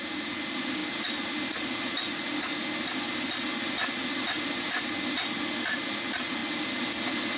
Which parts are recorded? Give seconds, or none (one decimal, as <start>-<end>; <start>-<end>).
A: 0.0-7.4